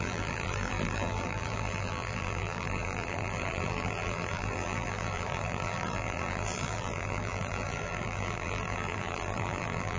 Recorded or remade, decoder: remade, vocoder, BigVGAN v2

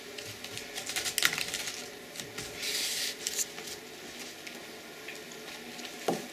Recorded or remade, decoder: recorded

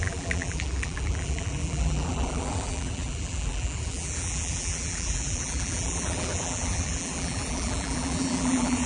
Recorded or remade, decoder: remade, vocoder, BigVGAN v2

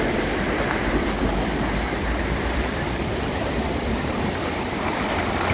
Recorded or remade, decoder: remade, vocoder, BigVGAN v2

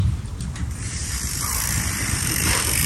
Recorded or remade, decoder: remade, vocoder, BigVGAN v2